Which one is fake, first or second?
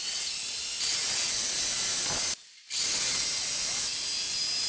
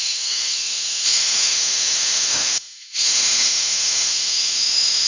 second